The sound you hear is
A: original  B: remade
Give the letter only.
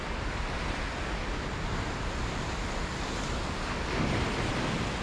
A